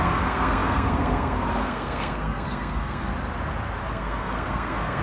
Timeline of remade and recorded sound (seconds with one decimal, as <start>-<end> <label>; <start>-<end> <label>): 0.0-3.1 remade; 3.1-3.9 recorded; 3.9-5.0 remade